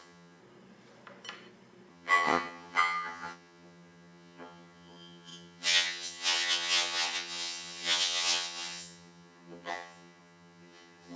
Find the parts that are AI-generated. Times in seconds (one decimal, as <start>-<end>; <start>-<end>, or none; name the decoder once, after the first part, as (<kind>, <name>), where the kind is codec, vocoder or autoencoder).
0.0-0.4 (vocoder, HiFi-GAN); 1.9-11.2